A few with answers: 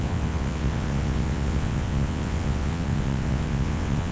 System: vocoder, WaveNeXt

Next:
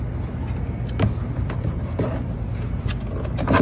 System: none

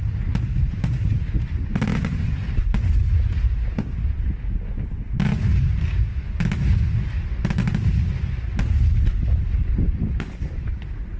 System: none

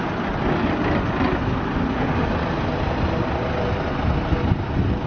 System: none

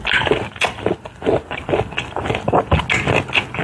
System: none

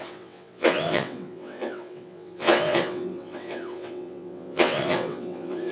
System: vocoder, WaveNeXt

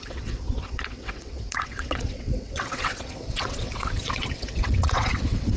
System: vocoder, WaveNeXt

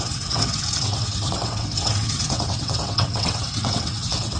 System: vocoder, WaveNeXt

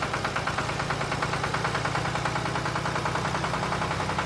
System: none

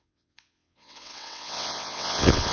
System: vocoder, WaveNeXt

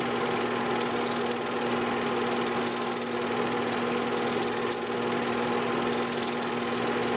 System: none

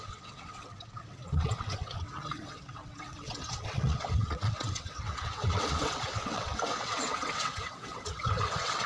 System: vocoder, WaveNeXt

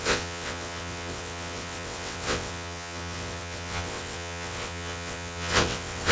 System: vocoder, WaveNeXt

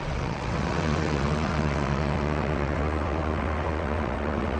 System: vocoder, WaveNeXt